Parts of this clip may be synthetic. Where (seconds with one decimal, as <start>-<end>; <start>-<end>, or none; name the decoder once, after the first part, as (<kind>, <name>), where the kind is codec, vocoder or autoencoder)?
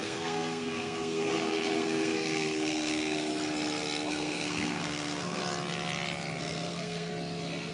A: 0.0-3.3 (codec, SNAC); 4.1-5.4; 6.4-7.1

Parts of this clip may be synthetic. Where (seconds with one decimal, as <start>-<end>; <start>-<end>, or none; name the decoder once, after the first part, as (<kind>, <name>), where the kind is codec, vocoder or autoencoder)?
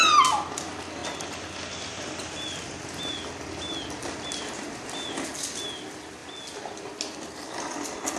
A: none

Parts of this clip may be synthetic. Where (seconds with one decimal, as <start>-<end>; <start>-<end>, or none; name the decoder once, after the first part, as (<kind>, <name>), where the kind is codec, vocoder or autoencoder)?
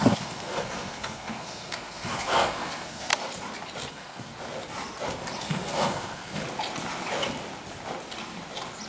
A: 0.0-3.1 (codec, SNAC); 3.9-4.3; 5.4-6.4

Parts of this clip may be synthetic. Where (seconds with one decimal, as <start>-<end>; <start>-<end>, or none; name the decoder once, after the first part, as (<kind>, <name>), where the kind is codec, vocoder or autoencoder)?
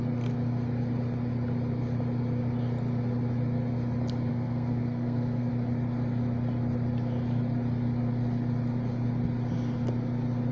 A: 4.3-5.5 (codec, SNAC)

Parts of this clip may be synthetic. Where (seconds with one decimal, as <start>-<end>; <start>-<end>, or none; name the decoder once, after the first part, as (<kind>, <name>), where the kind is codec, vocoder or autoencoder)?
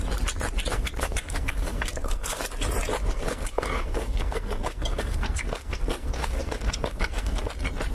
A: 0.7-2.4 (codec, SNAC); 3.1-7.5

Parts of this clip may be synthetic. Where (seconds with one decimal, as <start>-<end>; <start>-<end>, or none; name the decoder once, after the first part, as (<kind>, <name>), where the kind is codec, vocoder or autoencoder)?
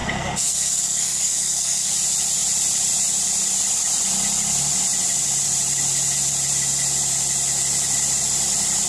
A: 0.0-1.9 (codec, SNAC)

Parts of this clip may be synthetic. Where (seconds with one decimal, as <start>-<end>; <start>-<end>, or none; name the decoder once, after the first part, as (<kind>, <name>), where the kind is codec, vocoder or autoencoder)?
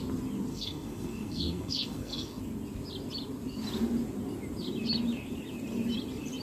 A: 0.5-2.4 (codec, SNAC)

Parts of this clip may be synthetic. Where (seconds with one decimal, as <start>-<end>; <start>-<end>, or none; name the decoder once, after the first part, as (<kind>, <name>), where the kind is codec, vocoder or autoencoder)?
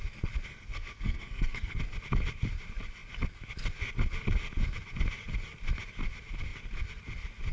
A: 0.5-1.8 (codec, SNAC)